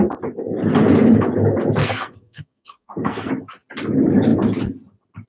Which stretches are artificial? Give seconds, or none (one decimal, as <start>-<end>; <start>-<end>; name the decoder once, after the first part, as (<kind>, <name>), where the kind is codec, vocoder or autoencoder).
1.8-3.3 (codec, SNAC)